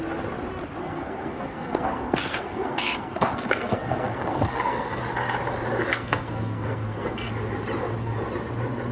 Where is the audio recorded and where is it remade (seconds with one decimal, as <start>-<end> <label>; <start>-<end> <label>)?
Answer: 0.0-0.8 recorded; 0.8-5.0 remade; 5.0-5.9 recorded; 5.9-7.3 remade; 7.3-8.9 recorded